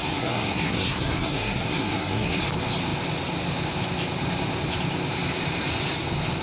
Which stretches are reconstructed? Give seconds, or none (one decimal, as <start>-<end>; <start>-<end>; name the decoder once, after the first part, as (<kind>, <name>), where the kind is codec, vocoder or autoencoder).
0.0-2.4 (codec, SNAC)